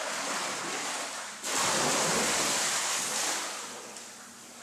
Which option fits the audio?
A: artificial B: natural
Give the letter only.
B